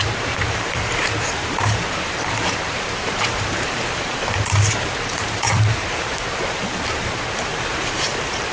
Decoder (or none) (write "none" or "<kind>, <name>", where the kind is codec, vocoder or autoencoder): vocoder, BigVGAN v2